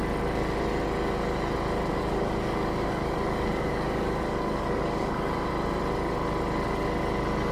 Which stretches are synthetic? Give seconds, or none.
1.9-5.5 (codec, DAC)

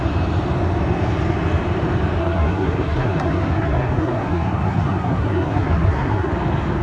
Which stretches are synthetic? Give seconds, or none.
2.2-6.3 (codec, SNAC)